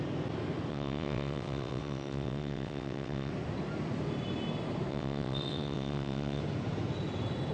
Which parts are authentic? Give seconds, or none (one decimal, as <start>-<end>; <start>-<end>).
0.0-0.7; 3.3-4.9; 6.4-7.5